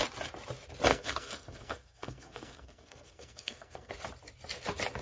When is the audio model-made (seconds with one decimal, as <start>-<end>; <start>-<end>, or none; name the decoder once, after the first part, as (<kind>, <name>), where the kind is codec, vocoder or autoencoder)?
0.9-3.9 (codec, SNAC)